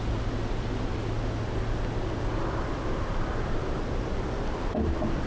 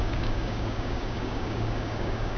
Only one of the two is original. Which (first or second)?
first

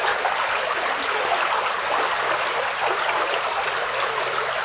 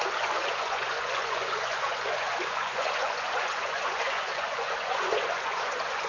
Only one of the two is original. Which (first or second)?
first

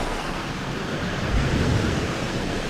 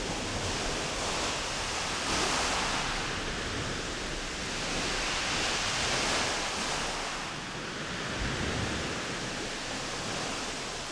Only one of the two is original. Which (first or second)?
second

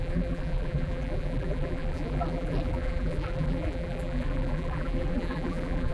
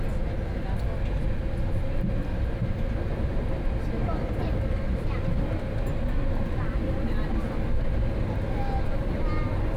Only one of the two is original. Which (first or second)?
second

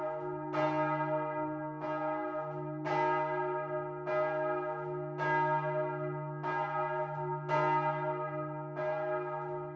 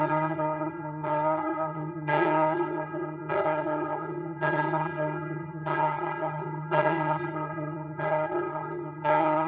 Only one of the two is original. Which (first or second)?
first